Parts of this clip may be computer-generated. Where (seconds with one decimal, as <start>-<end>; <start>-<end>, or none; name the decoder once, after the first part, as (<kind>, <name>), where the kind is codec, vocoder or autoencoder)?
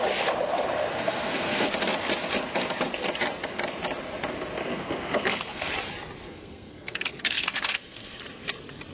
0.9-1.7 (codec, SNAC); 4.6-5.7; 6.2-8.2